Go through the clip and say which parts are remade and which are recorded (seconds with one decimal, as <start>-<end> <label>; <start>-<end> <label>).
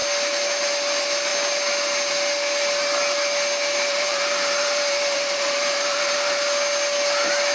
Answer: 0.0-3.9 recorded; 3.9-6.4 remade; 6.4-7.5 recorded